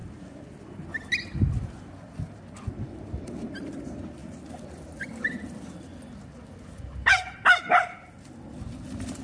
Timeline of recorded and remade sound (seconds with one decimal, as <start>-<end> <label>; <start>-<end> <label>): 0.0-9.2 recorded